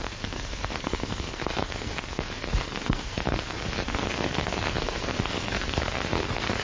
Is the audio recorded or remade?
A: remade